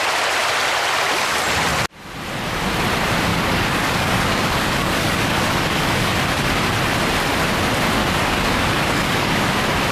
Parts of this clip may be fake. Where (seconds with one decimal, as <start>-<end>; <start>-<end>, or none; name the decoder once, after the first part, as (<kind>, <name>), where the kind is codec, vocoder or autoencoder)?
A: 3.3-6.7 (codec, DAC); 8.0-9.5